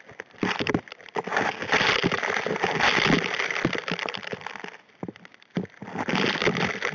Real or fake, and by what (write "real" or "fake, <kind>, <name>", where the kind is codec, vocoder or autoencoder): real